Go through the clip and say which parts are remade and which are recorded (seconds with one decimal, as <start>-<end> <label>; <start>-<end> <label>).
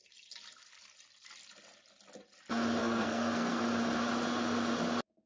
0.0-2.8 recorded; 2.8-3.6 remade; 3.6-5.3 recorded